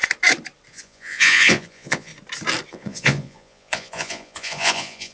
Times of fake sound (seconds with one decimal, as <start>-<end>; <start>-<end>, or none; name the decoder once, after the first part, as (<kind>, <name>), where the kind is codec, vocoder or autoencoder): 0.7-2.1 (vocoder, Vocos); 2.7-5.1